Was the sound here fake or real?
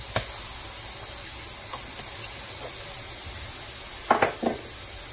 real